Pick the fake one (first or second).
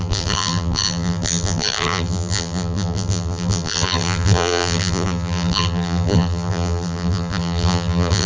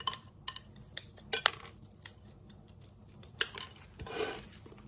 first